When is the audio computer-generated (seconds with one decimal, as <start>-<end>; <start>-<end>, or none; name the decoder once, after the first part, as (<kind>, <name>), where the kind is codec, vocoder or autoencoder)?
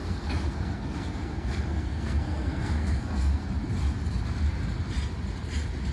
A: 0.0-3.4 (codec, SNAC)